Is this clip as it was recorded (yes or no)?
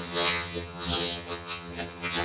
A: no